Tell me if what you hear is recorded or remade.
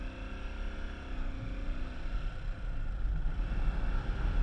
recorded